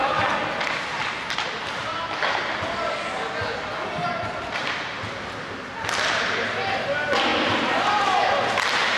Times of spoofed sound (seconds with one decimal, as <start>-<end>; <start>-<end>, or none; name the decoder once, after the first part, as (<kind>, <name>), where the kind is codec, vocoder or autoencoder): 7.3-8.3 (vocoder, BigVGAN v2)